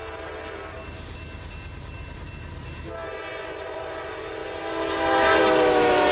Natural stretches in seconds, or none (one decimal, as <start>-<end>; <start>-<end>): 0.0-6.1